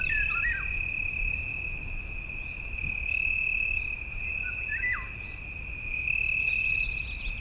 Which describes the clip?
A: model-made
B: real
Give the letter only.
B